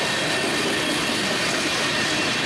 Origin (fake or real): real